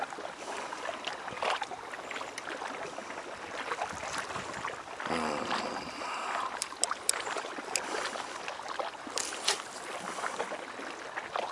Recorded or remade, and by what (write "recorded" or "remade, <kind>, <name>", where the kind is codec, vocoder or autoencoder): recorded